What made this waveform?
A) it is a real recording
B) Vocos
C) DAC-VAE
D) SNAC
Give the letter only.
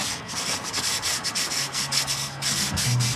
D